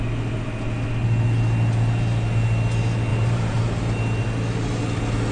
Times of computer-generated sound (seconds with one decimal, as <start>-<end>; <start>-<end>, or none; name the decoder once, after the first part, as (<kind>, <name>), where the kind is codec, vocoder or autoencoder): 3.1-3.6 (vocoder, BigVGAN v2)